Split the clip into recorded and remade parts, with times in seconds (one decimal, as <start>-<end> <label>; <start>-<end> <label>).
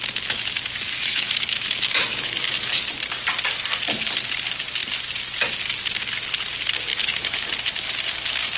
0.0-1.1 recorded; 1.1-2.9 remade; 2.9-6.9 recorded; 6.9-7.5 remade; 7.5-8.6 recorded